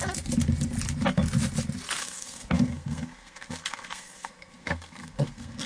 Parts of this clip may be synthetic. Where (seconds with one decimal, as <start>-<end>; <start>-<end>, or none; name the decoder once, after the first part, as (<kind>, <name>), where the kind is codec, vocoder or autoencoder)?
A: 2.0-5.7 (codec, SNAC)